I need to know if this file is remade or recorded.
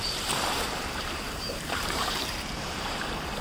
remade